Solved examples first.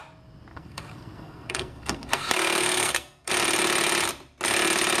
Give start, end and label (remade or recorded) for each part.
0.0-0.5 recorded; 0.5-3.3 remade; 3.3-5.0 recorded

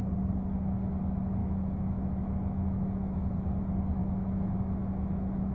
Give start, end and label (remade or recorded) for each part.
0.0-1.4 recorded; 1.4-3.3 remade; 3.3-4.0 recorded; 4.0-5.5 remade